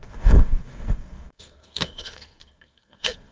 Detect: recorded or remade remade